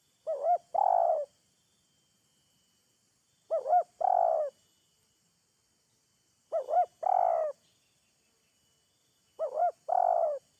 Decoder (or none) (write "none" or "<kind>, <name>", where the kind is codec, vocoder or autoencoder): none